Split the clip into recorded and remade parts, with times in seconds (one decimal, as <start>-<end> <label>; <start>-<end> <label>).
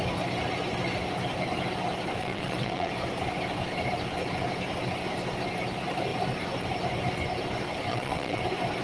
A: 0.0-2.2 recorded; 2.2-2.9 remade; 2.9-7.9 recorded; 7.9-8.4 remade; 8.4-8.8 recorded